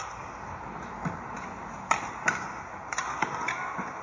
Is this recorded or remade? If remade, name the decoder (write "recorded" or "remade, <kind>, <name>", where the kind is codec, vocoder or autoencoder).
recorded